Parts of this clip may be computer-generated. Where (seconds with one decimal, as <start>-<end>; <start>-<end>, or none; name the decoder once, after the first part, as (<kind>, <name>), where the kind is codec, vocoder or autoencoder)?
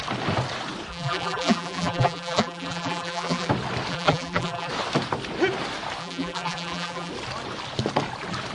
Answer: 0.9-3.5 (vocoder, BigVGAN v2); 3.9-4.7; 6.0-7.1